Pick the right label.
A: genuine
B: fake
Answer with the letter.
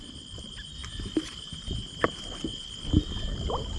A